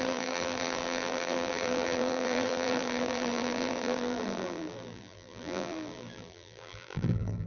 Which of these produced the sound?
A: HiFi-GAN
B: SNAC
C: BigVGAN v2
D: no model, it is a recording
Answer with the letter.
C